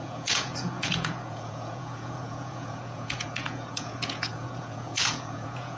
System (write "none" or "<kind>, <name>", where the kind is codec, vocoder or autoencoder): vocoder, Vocos